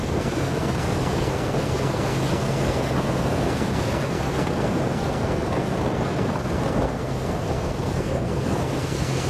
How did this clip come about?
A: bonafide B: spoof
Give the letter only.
B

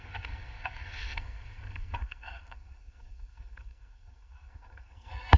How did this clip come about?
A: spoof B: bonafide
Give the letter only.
A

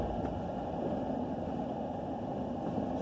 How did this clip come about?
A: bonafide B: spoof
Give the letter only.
A